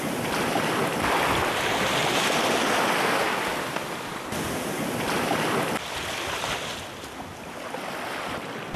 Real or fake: real